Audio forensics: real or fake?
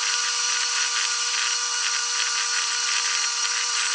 real